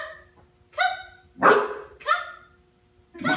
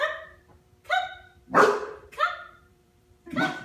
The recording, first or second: first